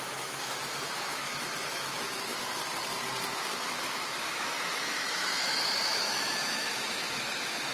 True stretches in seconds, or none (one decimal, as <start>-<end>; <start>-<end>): 2.6-3.3

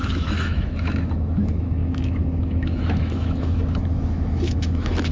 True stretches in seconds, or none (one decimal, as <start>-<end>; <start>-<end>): none